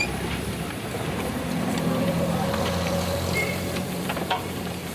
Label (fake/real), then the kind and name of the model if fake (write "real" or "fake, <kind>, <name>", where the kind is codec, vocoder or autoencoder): fake, vocoder, BigVGAN v2